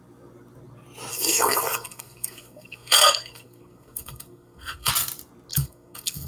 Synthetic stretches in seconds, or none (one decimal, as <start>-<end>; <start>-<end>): 1.1-4.9; 5.5-6.3